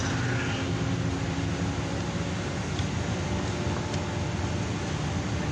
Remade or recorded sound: recorded